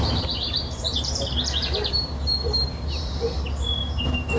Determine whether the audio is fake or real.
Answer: fake